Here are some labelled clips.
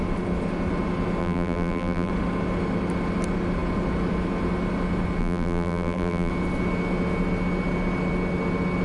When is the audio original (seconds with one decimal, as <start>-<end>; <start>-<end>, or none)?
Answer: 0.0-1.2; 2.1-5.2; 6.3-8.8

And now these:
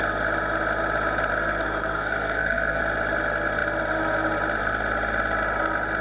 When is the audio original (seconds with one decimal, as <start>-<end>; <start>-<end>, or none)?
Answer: 0.0-1.3; 2.8-6.0

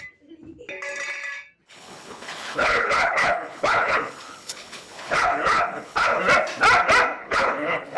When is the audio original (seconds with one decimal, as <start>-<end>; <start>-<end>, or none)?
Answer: 0.0-1.6; 6.2-7.2

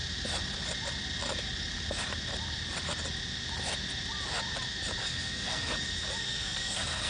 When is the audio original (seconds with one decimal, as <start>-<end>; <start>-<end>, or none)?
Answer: 0.0-5.0; 5.7-6.2